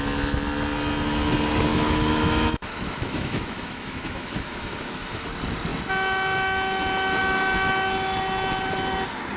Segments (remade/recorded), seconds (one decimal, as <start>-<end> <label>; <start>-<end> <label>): 0.0-1.7 recorded; 1.7-5.3 remade; 5.3-9.4 recorded